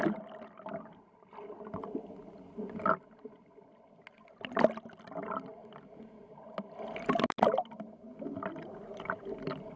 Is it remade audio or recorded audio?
recorded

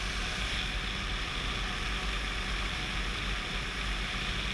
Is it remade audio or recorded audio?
recorded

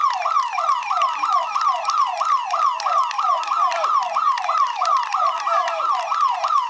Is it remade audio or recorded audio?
recorded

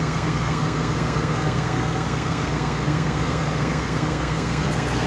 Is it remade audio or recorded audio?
remade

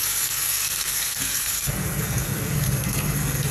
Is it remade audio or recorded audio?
remade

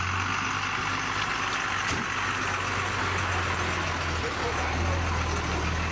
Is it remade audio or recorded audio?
recorded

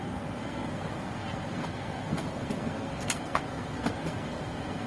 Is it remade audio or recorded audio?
remade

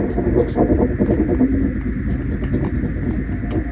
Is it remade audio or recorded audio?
recorded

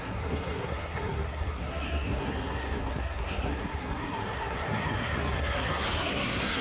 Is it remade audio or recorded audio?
remade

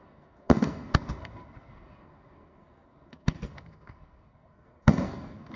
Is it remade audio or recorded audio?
remade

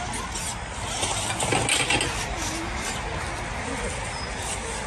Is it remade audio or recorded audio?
recorded